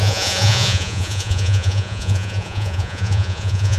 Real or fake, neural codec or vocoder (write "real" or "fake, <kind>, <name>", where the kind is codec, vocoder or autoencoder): fake, vocoder, Vocos